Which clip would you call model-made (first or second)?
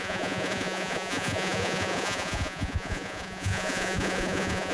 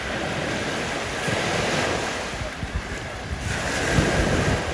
first